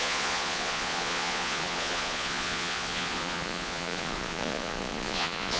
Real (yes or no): no